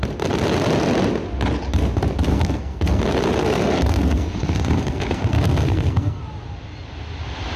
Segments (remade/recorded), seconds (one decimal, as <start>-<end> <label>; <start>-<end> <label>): 0.0-2.3 recorded; 2.3-3.0 remade; 3.0-3.4 recorded; 3.4-6.2 remade; 6.2-7.6 recorded